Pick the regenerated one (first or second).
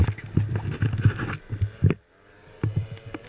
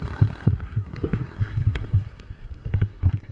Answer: second